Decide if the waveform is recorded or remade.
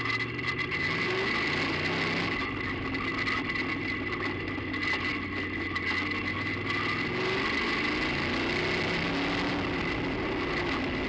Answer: recorded